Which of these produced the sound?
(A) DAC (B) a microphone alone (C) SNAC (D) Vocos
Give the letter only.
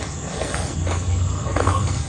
C